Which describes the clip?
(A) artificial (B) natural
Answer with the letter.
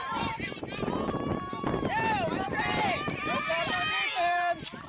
A